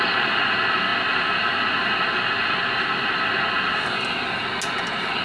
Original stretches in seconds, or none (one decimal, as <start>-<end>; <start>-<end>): 0.0-5.2